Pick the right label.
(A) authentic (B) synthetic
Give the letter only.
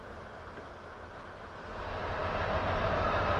A